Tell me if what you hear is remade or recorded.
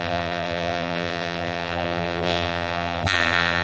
remade